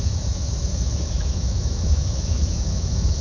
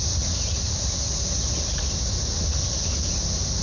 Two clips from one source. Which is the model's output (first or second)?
first